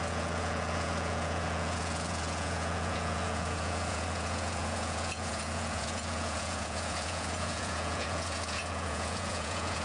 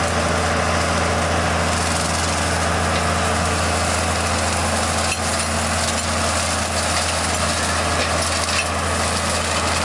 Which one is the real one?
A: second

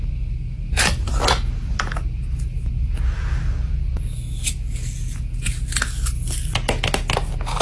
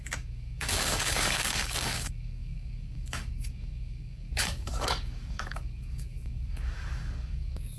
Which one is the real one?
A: first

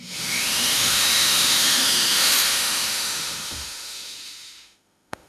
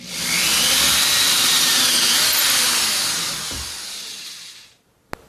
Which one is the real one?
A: second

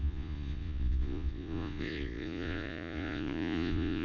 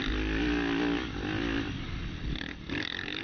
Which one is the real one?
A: second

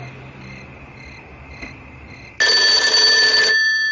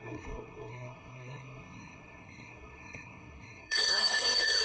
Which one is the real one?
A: first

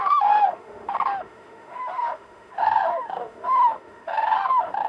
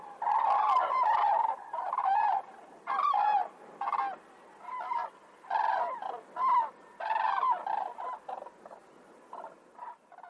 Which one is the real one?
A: second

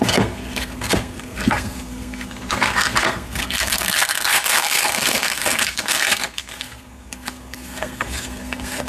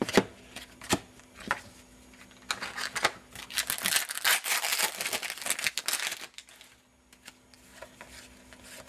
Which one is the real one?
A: second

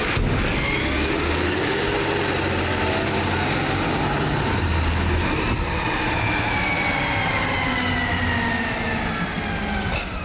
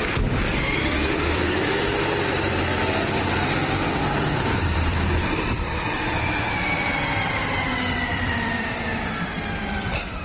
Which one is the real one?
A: first